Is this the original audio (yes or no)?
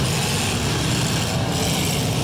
yes